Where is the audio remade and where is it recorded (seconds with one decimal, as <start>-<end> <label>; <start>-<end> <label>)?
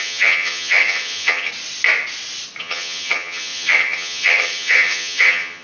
0.0-1.5 remade; 1.5-2.6 recorded; 2.6-5.6 remade